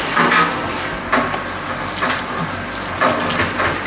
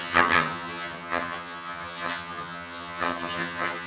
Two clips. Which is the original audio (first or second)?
first